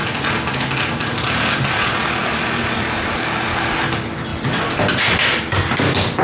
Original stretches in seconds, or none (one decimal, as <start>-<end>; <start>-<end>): 0.0-6.2